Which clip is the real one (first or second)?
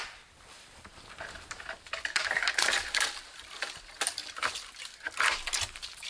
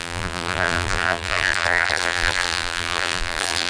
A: first